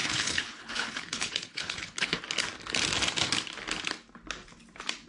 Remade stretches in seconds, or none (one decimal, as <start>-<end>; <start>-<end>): 0.0-2.2